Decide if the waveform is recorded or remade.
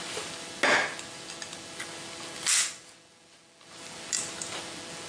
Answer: recorded